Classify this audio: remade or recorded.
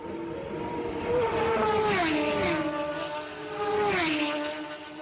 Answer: recorded